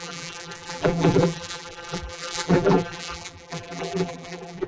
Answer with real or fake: fake